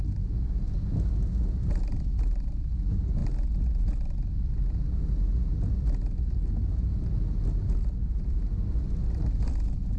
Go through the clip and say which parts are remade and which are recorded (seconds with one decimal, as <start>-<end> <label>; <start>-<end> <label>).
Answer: 0.0-10.0 recorded